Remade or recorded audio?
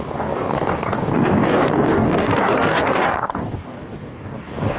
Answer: remade